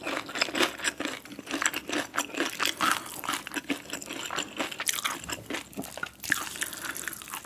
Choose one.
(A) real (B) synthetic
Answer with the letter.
A